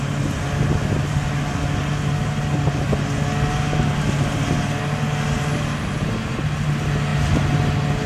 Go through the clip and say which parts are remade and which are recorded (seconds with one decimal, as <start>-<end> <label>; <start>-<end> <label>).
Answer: 0.0-8.1 recorded